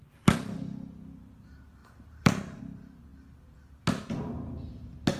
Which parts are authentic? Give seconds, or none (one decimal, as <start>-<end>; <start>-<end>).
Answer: 0.0-1.8; 2.6-5.2